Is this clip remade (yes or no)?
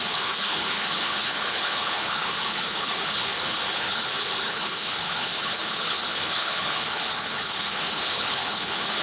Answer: yes